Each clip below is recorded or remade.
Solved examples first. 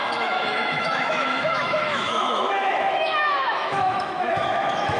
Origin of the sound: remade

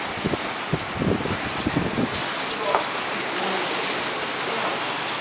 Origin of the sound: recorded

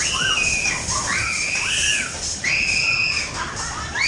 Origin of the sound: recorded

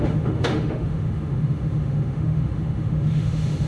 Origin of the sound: remade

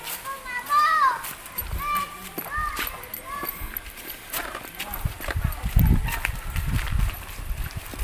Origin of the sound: recorded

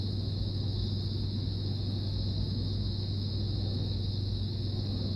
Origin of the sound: remade